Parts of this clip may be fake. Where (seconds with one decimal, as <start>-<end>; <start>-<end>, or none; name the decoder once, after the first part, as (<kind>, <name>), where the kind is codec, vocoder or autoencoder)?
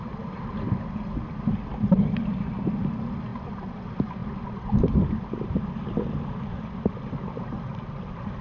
none